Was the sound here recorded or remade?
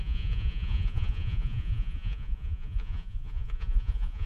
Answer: remade